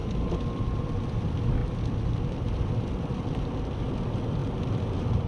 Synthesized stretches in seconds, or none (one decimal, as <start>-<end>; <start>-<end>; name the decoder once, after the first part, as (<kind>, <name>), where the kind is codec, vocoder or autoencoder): 0.0-1.2 (vocoder, BigVGAN v2); 1.6-3.8